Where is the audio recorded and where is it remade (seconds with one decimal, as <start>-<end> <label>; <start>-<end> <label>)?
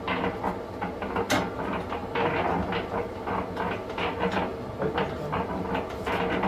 0.0-6.5 recorded